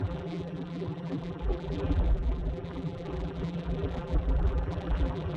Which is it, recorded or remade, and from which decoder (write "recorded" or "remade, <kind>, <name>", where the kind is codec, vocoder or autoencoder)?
remade, vocoder, BigVGAN v2